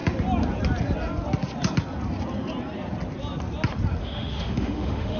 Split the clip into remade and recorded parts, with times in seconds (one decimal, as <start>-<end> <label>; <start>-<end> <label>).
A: 0.0-4.0 recorded; 4.0-5.2 remade